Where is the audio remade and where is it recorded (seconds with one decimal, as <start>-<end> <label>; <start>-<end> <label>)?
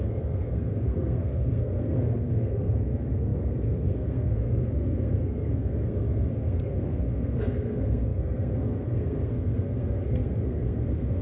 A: 0.0-11.2 remade